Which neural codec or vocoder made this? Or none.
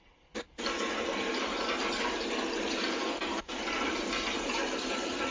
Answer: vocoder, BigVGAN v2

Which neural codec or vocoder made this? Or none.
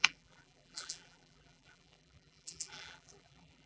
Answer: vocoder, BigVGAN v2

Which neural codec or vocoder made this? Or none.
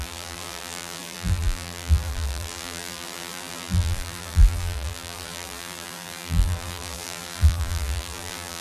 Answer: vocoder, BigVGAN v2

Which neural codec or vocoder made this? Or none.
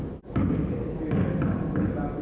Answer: none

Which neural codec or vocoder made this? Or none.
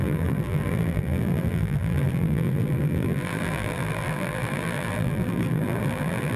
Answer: vocoder, BigVGAN v2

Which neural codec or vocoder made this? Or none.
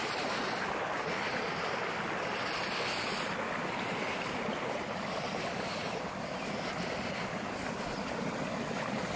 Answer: none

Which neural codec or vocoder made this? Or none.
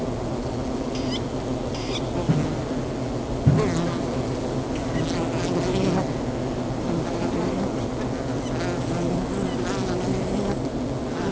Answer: none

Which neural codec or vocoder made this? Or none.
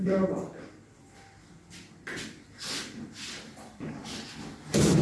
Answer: vocoder, BigVGAN v2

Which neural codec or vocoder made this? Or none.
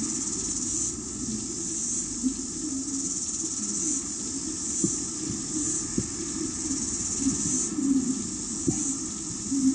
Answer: none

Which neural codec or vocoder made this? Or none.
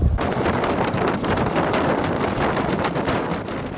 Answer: none